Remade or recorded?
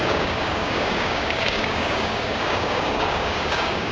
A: remade